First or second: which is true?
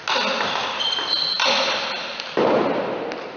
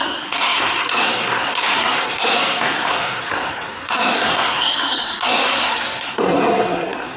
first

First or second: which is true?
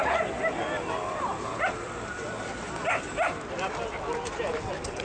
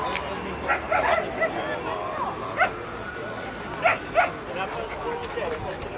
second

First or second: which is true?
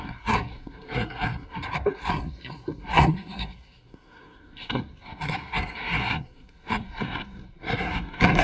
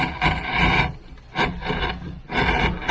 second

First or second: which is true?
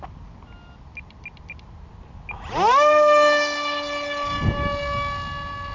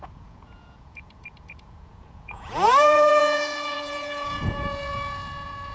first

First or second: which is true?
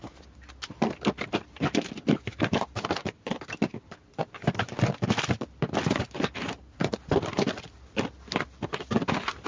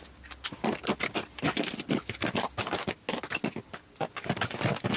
second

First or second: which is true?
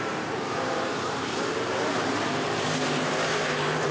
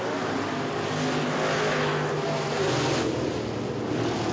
second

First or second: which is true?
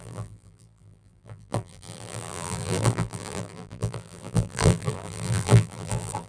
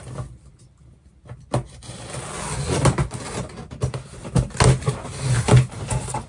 second